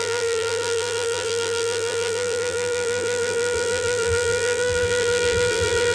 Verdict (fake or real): fake